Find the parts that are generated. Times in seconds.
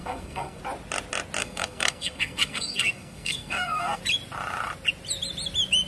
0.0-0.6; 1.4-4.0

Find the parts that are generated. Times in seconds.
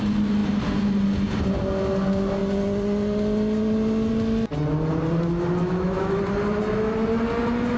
5.6-6.2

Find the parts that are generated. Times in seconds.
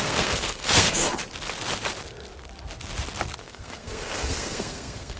0.0-1.2; 3.4-5.2